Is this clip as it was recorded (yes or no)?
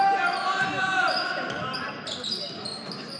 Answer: yes